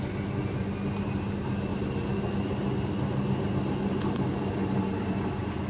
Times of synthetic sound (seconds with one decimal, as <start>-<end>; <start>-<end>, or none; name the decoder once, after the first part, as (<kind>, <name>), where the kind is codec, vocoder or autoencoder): none